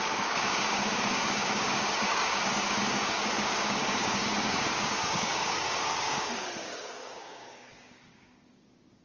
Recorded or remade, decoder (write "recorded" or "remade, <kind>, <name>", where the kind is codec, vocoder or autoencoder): remade, codec, DAC